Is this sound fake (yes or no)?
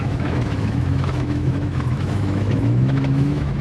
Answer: yes